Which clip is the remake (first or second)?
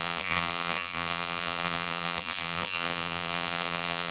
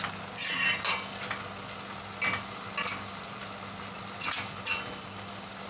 first